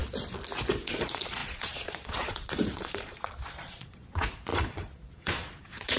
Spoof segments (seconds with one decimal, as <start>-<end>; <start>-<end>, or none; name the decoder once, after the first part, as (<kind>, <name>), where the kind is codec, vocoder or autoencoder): 0.7-6.0 (vocoder, Vocos)